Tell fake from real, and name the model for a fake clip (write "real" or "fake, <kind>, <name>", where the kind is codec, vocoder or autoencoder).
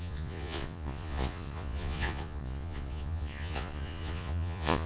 fake, vocoder, Vocos